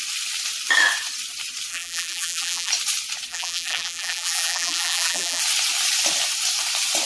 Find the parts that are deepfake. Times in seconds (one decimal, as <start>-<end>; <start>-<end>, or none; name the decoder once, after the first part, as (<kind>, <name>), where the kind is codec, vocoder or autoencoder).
1.7-2.7 (vocoder, BigVGAN v2); 3.3-5.4